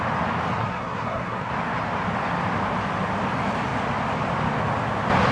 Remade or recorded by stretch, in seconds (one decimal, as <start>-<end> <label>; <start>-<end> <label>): 0.0-0.5 recorded; 0.5-1.5 remade; 1.5-5.3 recorded